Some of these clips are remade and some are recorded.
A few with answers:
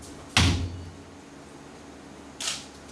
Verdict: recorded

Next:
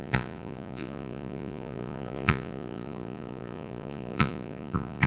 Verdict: remade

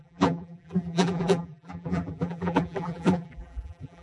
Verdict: remade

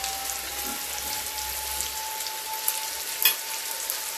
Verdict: recorded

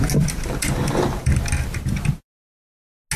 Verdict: recorded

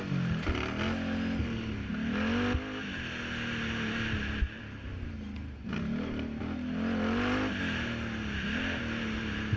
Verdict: recorded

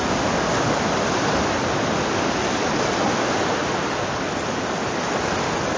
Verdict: recorded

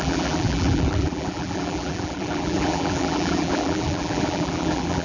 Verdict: remade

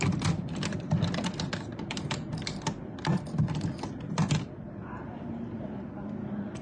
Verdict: remade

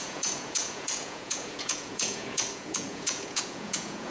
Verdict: remade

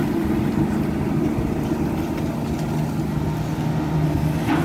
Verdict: recorded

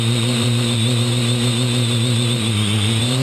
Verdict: remade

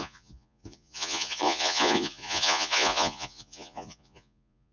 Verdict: remade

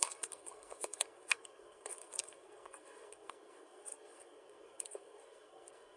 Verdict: remade